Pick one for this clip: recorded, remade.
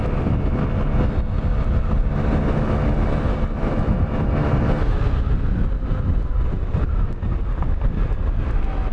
recorded